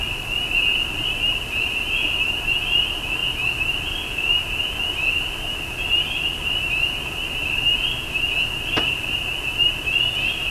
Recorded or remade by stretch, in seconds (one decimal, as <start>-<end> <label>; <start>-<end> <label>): 0.0-10.5 recorded